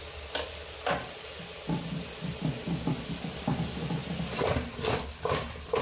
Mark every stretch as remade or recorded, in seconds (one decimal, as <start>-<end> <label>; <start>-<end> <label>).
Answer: 0.0-5.8 recorded